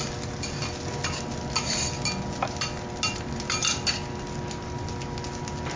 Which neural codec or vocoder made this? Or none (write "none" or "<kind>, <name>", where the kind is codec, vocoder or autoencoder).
none